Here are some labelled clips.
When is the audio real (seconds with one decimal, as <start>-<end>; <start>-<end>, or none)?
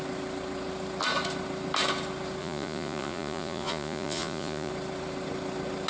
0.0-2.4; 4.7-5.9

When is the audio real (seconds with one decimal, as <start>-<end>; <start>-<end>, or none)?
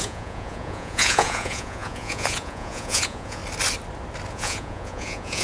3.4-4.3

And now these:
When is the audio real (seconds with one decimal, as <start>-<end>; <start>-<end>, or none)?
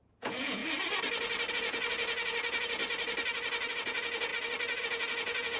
0.6-1.5; 2.8-3.7; 4.3-4.8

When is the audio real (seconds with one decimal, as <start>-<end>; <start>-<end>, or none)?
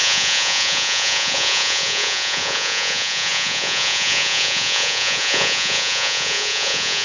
none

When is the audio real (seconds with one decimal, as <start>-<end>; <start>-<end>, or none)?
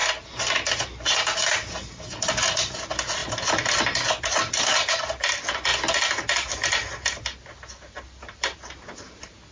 0.0-9.5